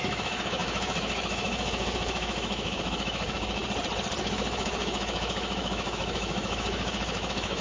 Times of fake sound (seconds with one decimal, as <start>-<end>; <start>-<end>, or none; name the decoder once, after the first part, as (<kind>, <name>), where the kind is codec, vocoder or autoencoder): 0.0-3.6 (autoencoder, DAC-VAE); 4.2-7.6

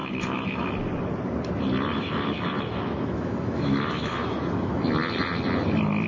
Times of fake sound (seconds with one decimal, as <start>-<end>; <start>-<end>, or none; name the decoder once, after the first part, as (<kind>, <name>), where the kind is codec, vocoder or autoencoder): 0.0-0.7 (autoencoder, DAC-VAE); 1.9-4.7

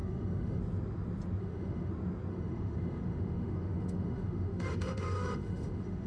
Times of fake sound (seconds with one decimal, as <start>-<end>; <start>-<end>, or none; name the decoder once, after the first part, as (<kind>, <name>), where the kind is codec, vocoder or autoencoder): 0.0-0.6 (autoencoder, DAC-VAE); 1.4-1.9; 2.3-6.1

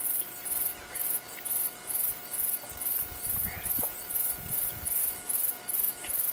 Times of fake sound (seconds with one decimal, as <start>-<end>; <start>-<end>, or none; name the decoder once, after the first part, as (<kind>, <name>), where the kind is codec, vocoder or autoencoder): 5.0-6.3 (autoencoder, DAC-VAE)

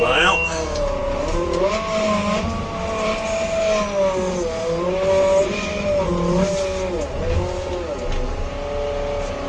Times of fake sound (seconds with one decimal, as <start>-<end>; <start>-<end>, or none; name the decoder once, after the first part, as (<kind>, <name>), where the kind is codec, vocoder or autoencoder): none

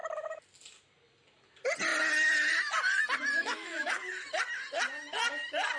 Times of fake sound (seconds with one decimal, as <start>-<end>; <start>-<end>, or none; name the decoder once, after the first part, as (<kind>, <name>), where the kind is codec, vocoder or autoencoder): 3.4-3.9 (autoencoder, DAC-VAE)